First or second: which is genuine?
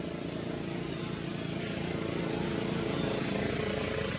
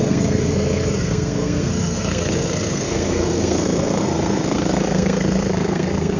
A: first